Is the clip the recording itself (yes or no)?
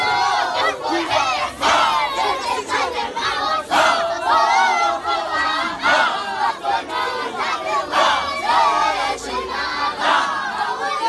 yes